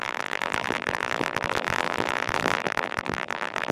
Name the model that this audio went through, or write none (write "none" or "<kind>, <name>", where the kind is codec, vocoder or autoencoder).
vocoder, BigVGAN v2